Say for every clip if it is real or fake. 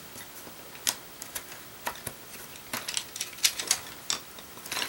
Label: real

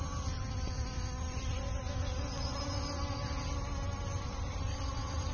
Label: real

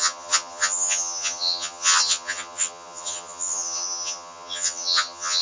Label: fake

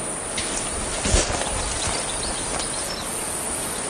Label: real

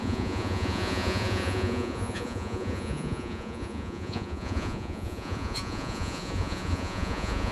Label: fake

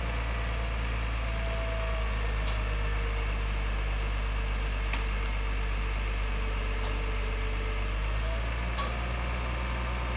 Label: real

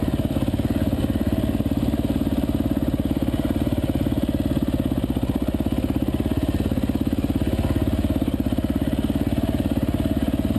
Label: real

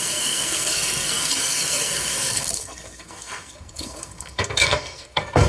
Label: fake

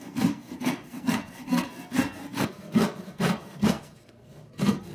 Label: fake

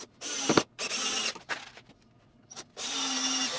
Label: real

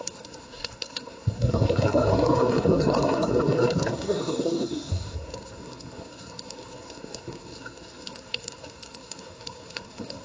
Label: fake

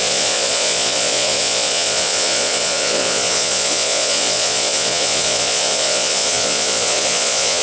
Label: fake